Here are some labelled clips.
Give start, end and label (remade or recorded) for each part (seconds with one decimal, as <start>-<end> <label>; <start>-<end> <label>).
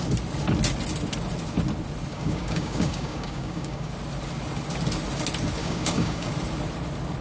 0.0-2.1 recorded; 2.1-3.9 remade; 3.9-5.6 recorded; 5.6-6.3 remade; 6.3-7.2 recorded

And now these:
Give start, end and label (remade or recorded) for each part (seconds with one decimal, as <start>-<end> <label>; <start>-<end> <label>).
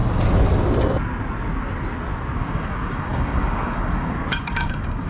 0.0-2.4 recorded; 2.4-5.1 remade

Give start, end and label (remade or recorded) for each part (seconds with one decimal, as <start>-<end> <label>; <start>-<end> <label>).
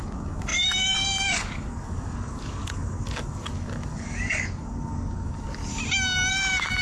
0.0-5.6 remade; 5.6-6.3 recorded; 6.3-6.8 remade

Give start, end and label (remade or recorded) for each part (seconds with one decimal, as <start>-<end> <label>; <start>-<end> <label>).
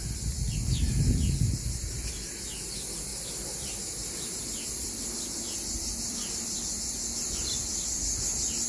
0.0-8.7 recorded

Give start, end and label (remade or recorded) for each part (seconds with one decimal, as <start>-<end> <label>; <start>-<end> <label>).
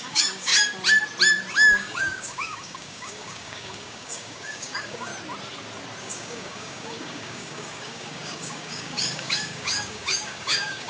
0.0-0.5 remade; 0.5-1.5 recorded; 1.5-5.1 remade; 5.1-6.0 recorded; 6.0-10.9 remade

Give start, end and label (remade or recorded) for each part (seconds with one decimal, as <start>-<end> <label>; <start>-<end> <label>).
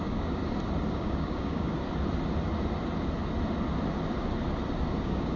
0.0-0.4 remade; 0.4-0.9 recorded; 0.9-1.8 remade; 1.8-5.0 recorded; 5.0-5.4 remade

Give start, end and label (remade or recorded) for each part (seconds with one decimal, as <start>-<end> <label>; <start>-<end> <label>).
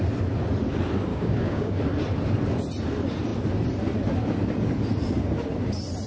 0.0-1.1 recorded; 1.1-1.7 remade; 1.7-6.1 recorded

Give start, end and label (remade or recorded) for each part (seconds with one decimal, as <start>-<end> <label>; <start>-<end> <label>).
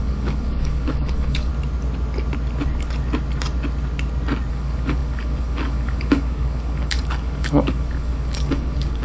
0.0-1.5 remade; 1.5-4.5 recorded; 4.5-9.0 remade